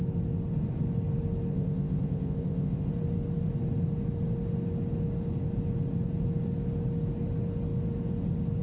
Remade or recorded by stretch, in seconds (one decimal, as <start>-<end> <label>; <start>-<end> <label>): 0.0-1.5 recorded; 1.5-2.9 remade; 2.9-8.6 recorded